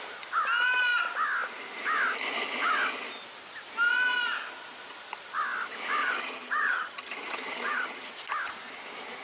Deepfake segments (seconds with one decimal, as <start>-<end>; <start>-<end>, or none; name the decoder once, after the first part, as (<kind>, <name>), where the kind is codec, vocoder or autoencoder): 6.0-8.1 (vocoder, HiFi-GAN)